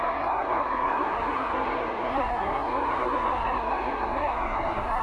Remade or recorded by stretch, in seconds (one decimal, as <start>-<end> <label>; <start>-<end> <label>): 0.0-5.0 remade